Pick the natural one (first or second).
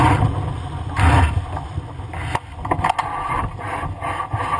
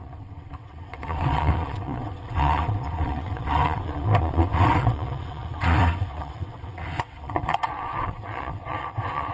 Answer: first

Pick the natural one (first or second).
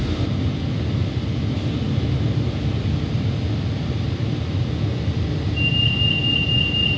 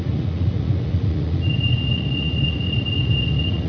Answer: first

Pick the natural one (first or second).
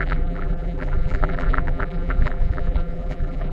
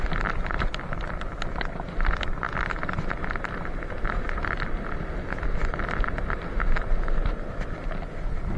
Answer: second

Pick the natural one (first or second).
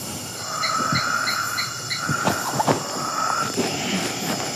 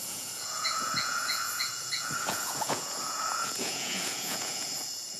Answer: first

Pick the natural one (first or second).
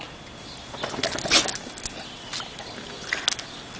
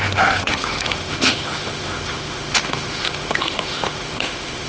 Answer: first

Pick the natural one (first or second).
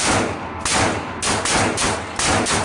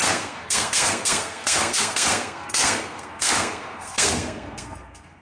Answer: first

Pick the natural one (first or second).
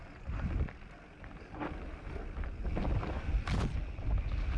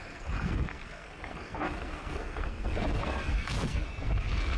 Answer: first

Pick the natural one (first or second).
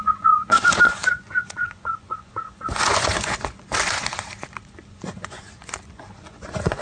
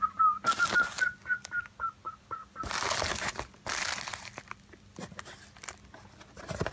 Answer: second